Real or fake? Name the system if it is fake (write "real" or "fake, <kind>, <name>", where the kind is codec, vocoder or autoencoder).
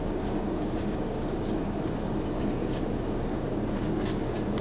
fake, codec, DAC